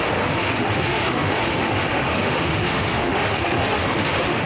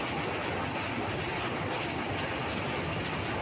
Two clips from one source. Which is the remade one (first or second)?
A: first